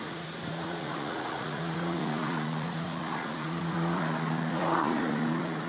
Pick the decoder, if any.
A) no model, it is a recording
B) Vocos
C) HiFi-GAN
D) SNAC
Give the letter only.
B